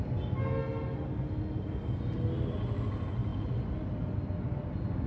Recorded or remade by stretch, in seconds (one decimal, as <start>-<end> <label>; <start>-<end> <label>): 0.0-5.1 recorded

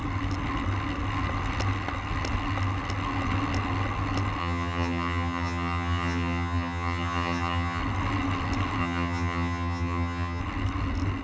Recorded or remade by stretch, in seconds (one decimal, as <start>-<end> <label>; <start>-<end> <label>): 0.0-4.4 recorded; 4.4-7.8 remade; 7.8-8.8 recorded; 8.8-10.4 remade; 10.4-11.2 recorded

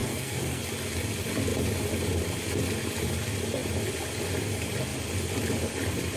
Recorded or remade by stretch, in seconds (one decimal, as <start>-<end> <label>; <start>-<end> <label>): 0.0-0.6 remade; 0.6-6.2 recorded

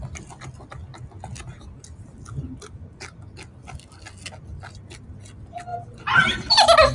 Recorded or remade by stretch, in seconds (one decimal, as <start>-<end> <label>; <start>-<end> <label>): 0.0-5.7 recorded; 5.7-6.5 remade; 6.5-6.9 recorded

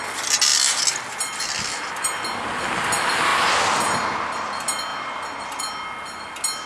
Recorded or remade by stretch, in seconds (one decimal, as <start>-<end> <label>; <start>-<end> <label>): 0.0-6.7 recorded

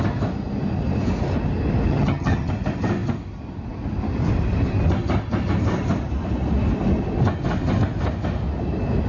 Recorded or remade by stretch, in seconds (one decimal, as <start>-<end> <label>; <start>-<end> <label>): 0.0-1.9 recorded; 1.9-2.5 remade; 2.5-9.1 recorded

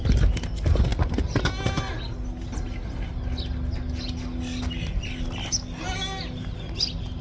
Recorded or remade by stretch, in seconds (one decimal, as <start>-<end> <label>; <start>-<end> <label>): 0.0-7.2 recorded